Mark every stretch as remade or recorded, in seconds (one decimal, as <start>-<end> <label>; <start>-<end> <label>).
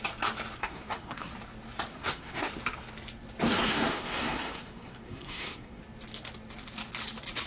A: 0.0-0.6 recorded; 0.6-1.3 remade; 1.3-1.9 recorded; 1.9-2.5 remade; 2.5-3.6 recorded; 3.6-5.8 remade; 5.8-7.5 recorded